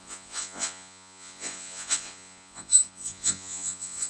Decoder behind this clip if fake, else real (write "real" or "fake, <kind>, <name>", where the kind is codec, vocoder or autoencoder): fake, vocoder, Vocos